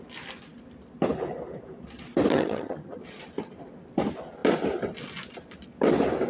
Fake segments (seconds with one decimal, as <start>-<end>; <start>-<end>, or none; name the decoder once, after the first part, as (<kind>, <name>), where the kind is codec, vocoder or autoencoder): 2.3-3.0 (vocoder, HiFi-GAN)